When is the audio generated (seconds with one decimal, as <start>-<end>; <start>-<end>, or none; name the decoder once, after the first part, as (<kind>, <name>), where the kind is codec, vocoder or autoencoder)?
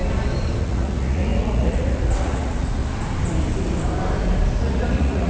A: 0.6-2.8 (vocoder, Vocos); 4.6-5.3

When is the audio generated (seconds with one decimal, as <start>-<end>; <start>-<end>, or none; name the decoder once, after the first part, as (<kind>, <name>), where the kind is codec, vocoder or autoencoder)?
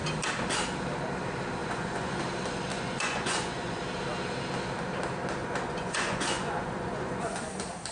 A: 1.6-2.2 (vocoder, Vocos); 2.7-3.8; 5.4-7.4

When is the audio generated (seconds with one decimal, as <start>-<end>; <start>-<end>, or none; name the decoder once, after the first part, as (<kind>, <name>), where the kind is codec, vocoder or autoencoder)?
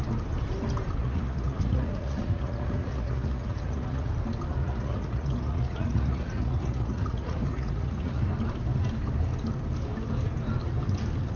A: 1.0-4.1 (vocoder, Vocos); 4.6-8.2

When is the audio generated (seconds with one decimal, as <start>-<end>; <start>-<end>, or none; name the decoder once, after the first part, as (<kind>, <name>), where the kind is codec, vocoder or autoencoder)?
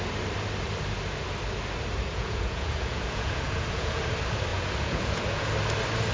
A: 2.1-4.0 (vocoder, Vocos); 4.5-5.5